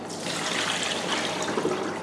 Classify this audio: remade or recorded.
recorded